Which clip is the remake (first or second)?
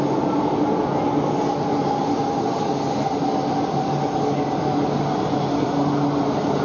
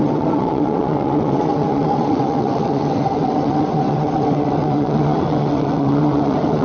second